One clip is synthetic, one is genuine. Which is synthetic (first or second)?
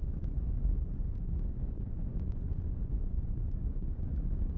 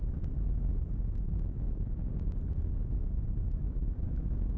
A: first